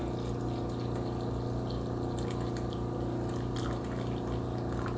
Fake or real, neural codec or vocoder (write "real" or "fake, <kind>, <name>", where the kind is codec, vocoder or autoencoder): real